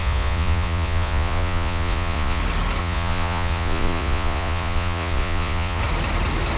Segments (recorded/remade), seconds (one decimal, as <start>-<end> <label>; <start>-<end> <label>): 0.0-2.4 remade; 2.4-2.8 recorded; 2.8-5.8 remade; 5.8-6.6 recorded